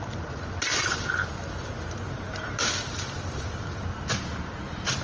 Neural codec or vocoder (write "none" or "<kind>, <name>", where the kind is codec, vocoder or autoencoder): none